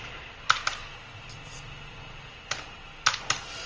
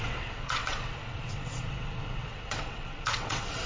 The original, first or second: first